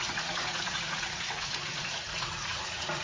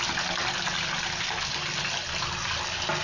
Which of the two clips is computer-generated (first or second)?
first